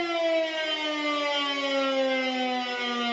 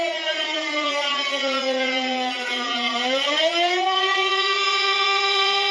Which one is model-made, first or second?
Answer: second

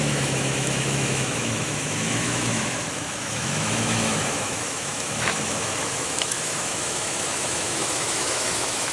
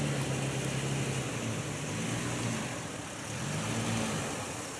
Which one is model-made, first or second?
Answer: first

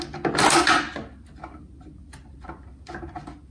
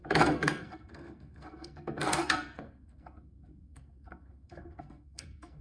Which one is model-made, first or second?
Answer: second